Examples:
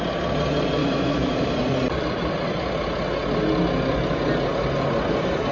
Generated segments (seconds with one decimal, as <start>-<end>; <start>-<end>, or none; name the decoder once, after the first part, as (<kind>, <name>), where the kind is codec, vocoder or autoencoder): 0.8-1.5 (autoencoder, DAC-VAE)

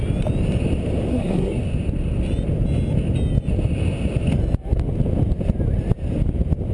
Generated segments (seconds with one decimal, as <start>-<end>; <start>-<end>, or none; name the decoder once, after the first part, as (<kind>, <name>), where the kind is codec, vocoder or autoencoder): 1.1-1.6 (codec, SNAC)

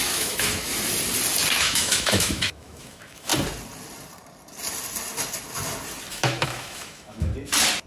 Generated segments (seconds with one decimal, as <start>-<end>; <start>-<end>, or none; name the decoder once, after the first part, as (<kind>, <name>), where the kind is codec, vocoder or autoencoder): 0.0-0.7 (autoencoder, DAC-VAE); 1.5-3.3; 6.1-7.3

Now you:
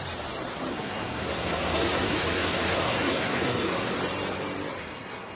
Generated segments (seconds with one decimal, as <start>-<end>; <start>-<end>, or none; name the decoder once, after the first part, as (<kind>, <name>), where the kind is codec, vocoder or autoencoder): 0.7-3.9 (codec, SNAC); 4.8-5.4